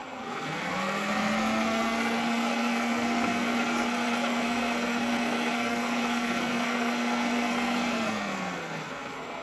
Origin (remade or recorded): remade